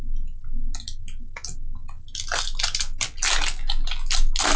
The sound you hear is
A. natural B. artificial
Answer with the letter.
A